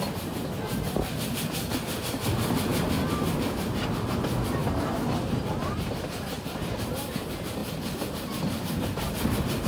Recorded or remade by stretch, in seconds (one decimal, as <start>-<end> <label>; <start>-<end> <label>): 0.0-4.6 recorded; 4.6-5.6 remade; 5.6-7.6 recorded; 7.6-9.7 remade